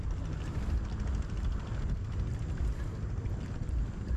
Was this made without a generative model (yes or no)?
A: yes